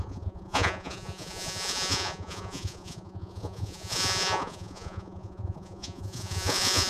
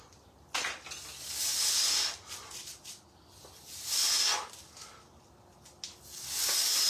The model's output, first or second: first